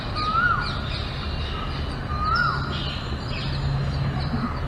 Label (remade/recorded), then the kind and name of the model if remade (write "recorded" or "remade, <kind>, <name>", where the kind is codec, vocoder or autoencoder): recorded